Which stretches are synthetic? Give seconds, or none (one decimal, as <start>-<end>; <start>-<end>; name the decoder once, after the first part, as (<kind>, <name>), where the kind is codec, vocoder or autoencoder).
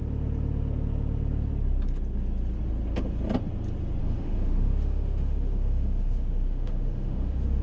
4.0-7.6 (autoencoder, DAC-VAE)